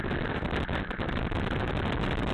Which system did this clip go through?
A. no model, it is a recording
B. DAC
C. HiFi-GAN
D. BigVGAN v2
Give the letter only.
A